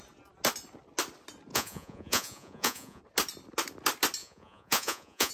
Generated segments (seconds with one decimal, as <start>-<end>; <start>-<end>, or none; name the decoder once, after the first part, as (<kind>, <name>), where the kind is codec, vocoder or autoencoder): 1.5-3.0 (vocoder, Vocos); 4.2-5.3